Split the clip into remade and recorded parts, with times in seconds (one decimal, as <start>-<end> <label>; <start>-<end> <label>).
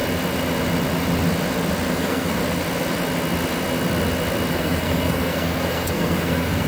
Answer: 0.0-1.9 recorded; 1.9-2.4 remade; 2.4-4.5 recorded; 4.5-6.7 remade